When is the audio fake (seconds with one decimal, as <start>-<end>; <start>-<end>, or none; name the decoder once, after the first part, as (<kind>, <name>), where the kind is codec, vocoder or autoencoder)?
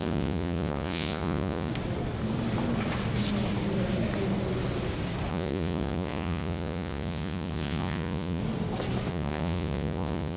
0.0-1.7 (vocoder, Vocos); 5.3-8.4; 9.1-10.4